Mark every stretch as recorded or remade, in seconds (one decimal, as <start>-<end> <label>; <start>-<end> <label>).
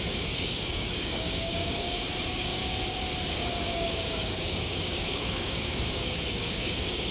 0.0-2.6 remade; 2.6-3.3 recorded; 3.3-7.1 remade